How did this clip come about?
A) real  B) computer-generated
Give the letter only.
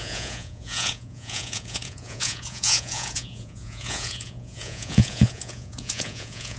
B